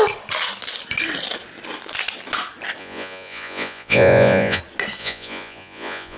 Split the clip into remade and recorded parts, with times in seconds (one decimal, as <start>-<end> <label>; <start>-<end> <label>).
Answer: 0.0-2.8 recorded; 2.8-4.6 remade; 4.6-5.0 recorded; 5.0-6.2 remade